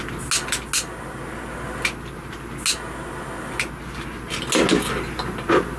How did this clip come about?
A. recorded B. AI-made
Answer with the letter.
A